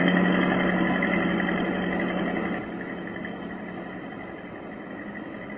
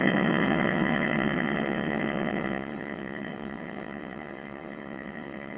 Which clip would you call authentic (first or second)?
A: first